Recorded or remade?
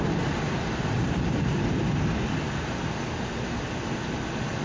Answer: recorded